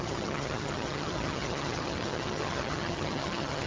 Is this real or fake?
fake